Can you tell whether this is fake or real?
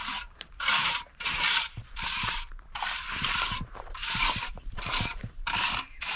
fake